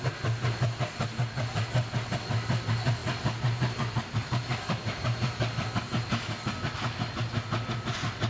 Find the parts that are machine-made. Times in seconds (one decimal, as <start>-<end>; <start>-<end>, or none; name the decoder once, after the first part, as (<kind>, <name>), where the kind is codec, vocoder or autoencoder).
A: none